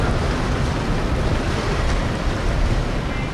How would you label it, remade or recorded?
recorded